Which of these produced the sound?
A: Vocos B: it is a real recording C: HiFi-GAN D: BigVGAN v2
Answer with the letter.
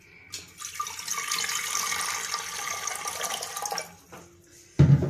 B